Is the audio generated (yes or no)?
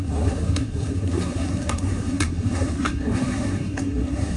yes